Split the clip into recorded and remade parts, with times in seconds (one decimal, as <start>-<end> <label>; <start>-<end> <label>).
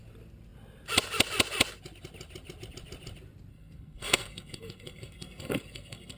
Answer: 0.0-3.5 recorded; 3.5-6.2 remade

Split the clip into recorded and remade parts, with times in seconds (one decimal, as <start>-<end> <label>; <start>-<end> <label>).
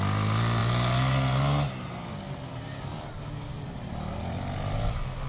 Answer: 0.0-5.3 recorded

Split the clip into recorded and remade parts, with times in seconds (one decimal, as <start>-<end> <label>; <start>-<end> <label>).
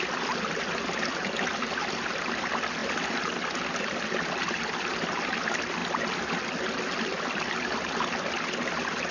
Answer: 0.0-9.1 recorded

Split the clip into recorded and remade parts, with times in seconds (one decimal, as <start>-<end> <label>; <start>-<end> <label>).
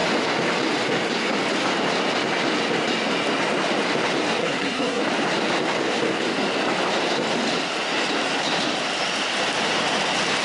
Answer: 0.0-4.4 recorded; 4.4-5.0 remade; 5.0-10.4 recorded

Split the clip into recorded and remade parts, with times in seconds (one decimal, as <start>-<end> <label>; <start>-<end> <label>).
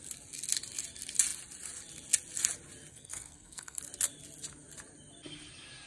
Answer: 0.0-2.9 recorded; 2.9-3.8 remade; 3.8-5.9 recorded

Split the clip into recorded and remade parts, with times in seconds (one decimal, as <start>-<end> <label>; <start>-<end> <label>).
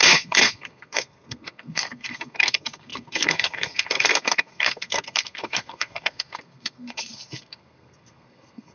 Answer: 0.0-8.7 remade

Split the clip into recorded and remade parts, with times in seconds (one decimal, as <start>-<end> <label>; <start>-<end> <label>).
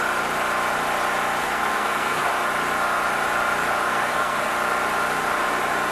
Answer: 0.0-1.4 recorded; 1.4-2.3 remade; 2.3-3.9 recorded; 3.9-4.5 remade; 4.5-5.9 recorded